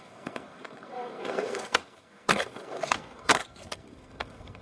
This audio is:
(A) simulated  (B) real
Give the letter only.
A